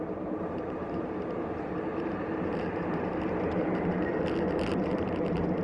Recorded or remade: remade